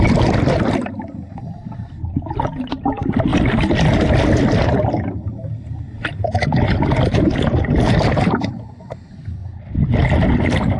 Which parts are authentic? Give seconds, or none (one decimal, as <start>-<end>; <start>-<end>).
3.3-7.6; 9.4-10.1

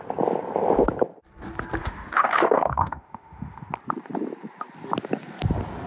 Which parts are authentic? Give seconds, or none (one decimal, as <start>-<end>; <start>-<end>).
0.0-1.8; 3.7-5.9

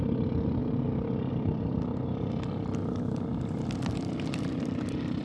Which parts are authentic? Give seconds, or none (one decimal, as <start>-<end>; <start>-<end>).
0.0-5.2

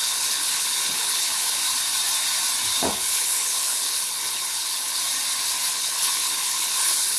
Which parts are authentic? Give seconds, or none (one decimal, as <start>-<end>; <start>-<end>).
1.6-2.9; 5.0-5.7